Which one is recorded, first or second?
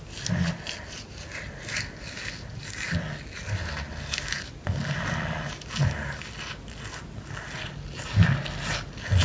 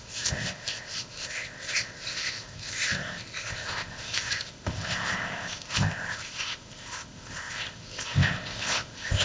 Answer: first